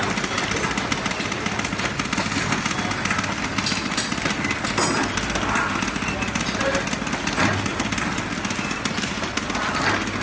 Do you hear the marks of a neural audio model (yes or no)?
no